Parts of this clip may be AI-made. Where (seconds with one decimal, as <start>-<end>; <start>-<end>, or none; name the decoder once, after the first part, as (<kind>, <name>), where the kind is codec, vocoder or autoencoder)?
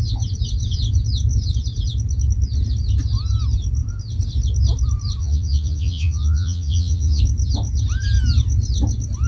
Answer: 5.2-7.2 (vocoder, Vocos)